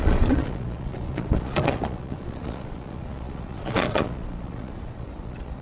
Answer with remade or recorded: remade